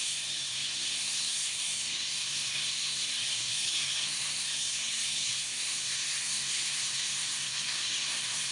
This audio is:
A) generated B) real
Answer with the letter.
A